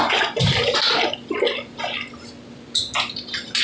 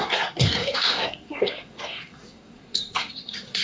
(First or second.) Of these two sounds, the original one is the first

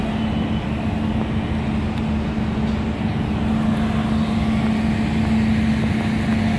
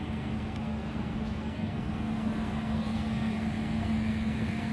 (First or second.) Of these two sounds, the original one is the first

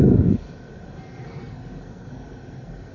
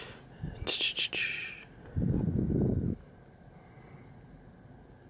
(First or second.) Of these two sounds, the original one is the second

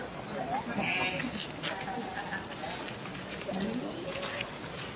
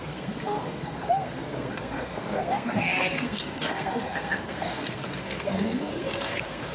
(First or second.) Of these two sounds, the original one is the first